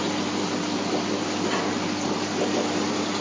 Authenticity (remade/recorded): recorded